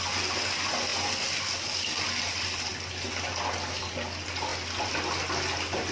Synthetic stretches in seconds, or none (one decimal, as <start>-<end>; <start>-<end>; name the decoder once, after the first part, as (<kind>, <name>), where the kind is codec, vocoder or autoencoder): none